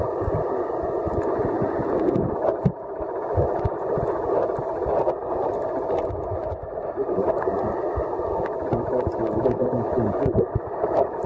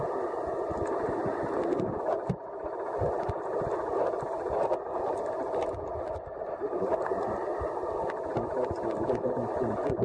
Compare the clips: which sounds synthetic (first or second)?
second